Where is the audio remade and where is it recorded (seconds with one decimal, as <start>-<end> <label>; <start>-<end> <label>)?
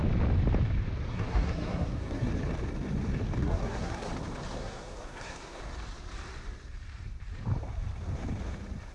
0.0-1.1 recorded; 1.1-2.3 remade; 2.3-3.4 recorded; 3.4-4.1 remade; 4.1-4.6 recorded; 4.6-5.6 remade; 5.6-8.9 recorded